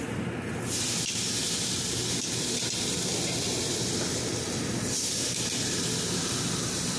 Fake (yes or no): no